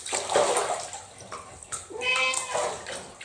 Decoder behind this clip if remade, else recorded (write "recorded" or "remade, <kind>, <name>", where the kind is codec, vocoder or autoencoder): recorded